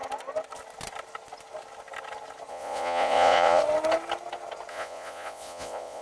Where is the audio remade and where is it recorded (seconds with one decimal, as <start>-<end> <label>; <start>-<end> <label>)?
0.0-2.5 recorded; 2.5-3.6 remade; 3.6-4.7 recorded; 4.7-6.0 remade

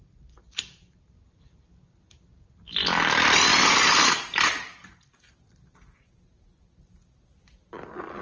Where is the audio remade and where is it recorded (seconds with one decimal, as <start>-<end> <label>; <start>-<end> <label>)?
0.0-8.2 recorded

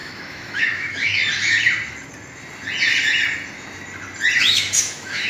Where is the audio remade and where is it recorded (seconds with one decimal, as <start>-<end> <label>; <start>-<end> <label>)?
0.0-1.2 remade; 1.2-4.4 recorded; 4.4-5.3 remade